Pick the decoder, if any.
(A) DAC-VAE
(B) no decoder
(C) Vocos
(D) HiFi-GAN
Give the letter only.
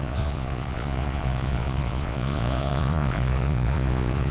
C